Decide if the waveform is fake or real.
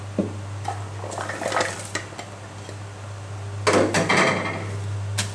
real